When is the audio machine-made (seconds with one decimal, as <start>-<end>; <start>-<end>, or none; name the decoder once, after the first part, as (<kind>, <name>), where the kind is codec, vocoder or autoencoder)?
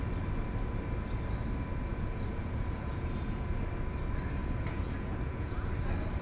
1.9-3.6 (vocoder, Vocos); 4.4-5.7